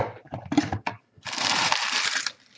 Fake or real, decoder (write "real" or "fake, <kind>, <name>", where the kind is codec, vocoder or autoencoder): fake, vocoder, BigVGAN v2